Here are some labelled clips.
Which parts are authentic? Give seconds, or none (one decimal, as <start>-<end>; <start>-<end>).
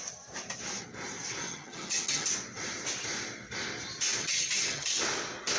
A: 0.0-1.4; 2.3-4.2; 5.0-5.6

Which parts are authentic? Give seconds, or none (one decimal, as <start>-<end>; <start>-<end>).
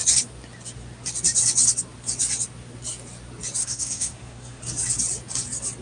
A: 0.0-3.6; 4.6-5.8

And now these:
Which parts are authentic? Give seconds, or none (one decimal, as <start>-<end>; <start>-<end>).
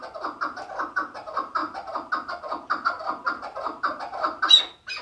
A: 0.0-5.0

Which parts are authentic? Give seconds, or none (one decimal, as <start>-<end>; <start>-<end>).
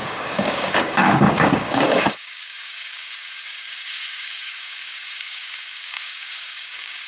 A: none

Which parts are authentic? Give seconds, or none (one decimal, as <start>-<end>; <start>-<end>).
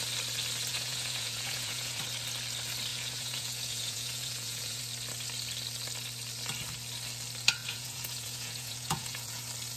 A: 0.0-0.7; 2.0-2.9; 4.8-7.6; 9.4-9.8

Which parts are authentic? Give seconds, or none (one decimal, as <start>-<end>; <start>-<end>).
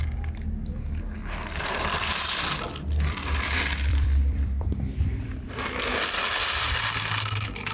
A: 0.0-1.2; 5.8-7.7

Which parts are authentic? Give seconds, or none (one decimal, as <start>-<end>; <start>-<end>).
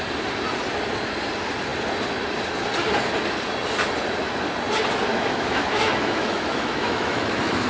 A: 0.0-5.1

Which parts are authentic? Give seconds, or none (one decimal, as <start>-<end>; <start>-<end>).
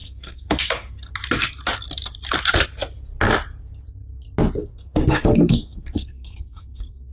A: 1.1-4.6